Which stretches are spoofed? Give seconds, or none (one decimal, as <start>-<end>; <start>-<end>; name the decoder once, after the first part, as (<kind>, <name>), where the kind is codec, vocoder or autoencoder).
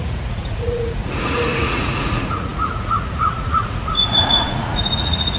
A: 0.0-5.4 (vocoder, Vocos)